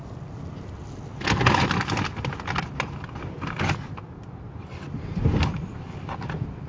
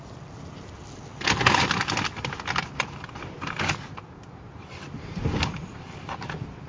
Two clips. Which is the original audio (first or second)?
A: first